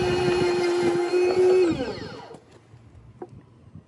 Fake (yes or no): no